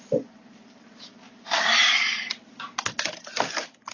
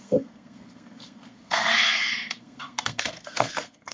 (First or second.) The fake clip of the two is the second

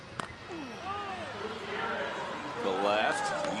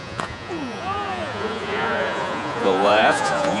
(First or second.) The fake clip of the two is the second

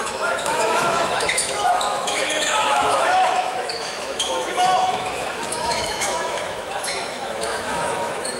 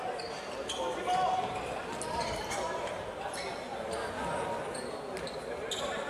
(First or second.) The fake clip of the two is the first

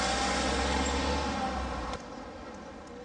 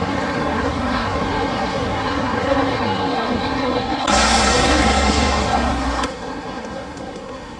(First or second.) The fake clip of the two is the second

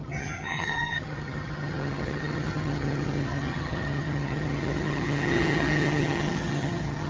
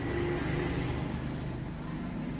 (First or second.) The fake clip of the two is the first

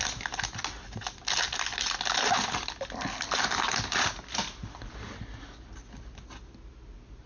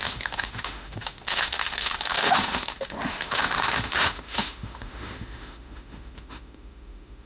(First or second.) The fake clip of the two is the second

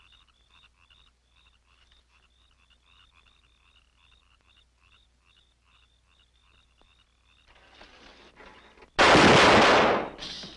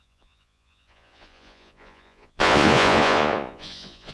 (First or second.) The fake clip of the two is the second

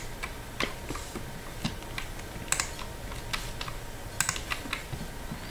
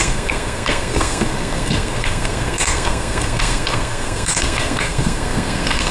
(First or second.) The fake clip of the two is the second